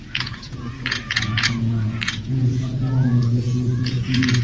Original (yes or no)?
no